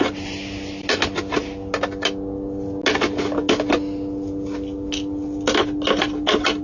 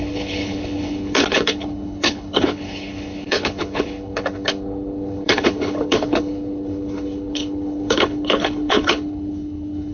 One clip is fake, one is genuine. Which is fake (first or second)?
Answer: second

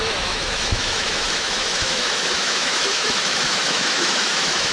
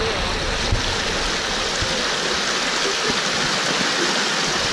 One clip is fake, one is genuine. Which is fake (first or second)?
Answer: first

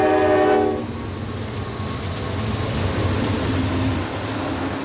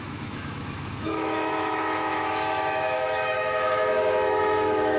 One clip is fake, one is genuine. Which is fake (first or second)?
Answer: second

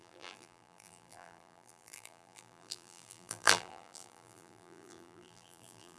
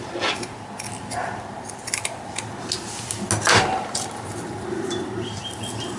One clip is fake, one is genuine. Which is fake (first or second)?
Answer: first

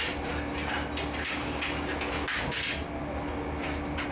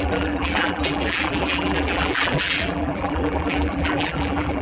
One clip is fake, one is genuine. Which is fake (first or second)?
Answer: second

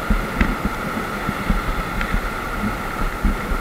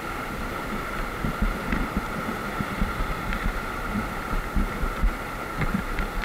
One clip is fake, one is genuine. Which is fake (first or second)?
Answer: second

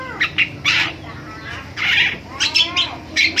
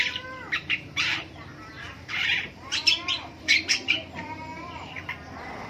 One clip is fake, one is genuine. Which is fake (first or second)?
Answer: second